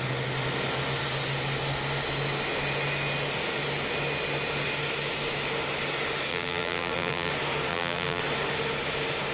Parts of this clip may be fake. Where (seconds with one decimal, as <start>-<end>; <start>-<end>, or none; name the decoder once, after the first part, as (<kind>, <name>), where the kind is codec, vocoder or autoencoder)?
6.3-7.3 (vocoder, BigVGAN v2); 7.7-8.2